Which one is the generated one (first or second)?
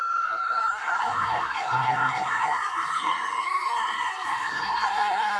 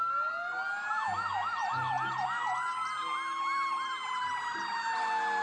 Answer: first